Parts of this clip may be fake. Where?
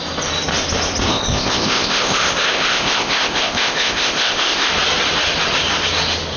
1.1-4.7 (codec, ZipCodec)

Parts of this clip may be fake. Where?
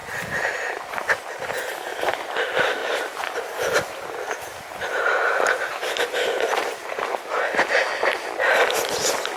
2.8-7.4 (vocoder, BigVGAN v2)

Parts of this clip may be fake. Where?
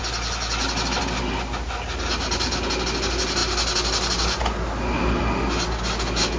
none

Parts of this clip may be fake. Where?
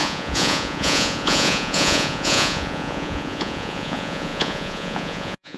0.0-5.6 (vocoder, Vocos)